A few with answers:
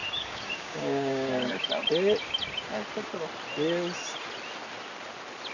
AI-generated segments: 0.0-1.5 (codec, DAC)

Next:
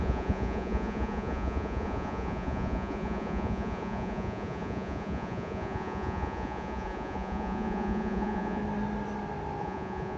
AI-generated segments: 0.0-8.6 (vocoder, Vocos); 9.6-10.2

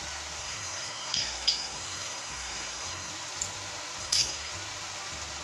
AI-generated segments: 0.4-3.1 (codec, SNAC); 4.0-4.5

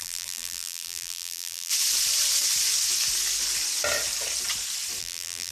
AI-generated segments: 0.0-1.7 (vocoder, BigVGAN v2); 5.0-5.5

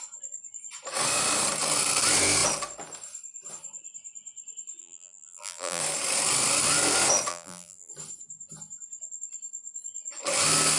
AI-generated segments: 4.8-5.8 (vocoder, BigVGAN v2); 7.3-7.9